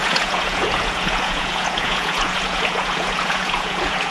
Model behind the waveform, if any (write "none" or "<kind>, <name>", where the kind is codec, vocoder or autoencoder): vocoder, Vocos